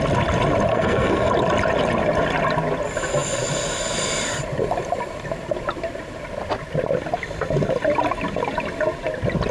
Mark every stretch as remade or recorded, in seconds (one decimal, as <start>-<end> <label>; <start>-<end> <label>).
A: 0.0-0.7 recorded; 0.7-1.3 remade; 1.3-9.5 recorded